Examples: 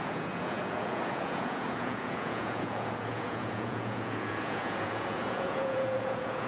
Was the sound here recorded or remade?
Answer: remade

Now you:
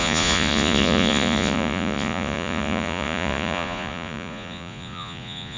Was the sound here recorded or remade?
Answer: remade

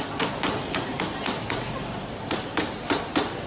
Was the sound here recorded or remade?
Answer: recorded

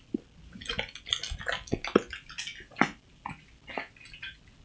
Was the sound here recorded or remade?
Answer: recorded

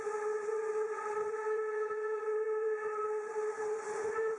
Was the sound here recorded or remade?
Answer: remade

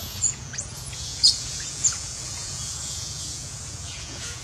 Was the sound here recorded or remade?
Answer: remade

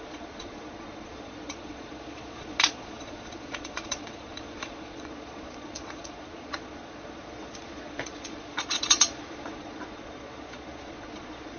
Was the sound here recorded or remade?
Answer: remade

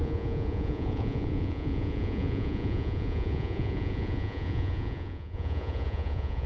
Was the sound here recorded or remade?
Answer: remade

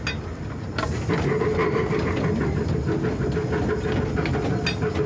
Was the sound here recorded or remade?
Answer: recorded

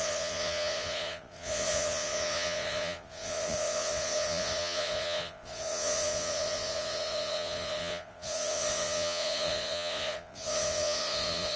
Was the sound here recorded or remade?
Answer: remade